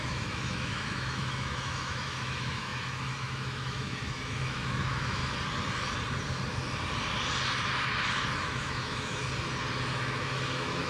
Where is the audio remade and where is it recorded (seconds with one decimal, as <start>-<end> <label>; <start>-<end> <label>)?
0.0-5.2 remade; 5.2-8.4 recorded; 8.4-9.2 remade; 9.2-9.9 recorded; 9.9-10.9 remade